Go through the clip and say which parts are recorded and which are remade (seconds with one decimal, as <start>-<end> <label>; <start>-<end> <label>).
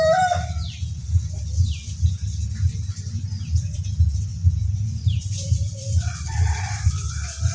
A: 0.0-7.5 remade